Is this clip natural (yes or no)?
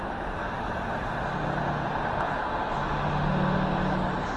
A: yes